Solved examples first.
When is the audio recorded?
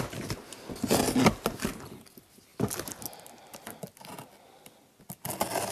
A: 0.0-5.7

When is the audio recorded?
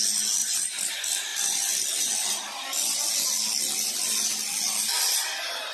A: 0.0-0.4; 0.9-5.7